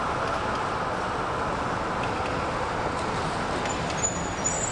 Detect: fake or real real